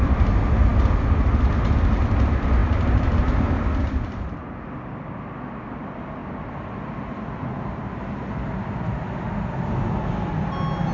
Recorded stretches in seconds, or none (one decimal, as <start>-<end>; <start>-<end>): 0.0-10.9